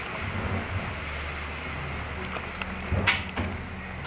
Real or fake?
real